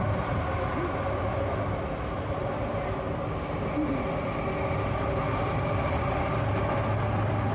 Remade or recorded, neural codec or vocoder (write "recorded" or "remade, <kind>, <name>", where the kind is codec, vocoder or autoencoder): recorded